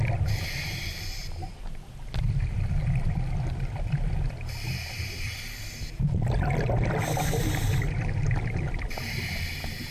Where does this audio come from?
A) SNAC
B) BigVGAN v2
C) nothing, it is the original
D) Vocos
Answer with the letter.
C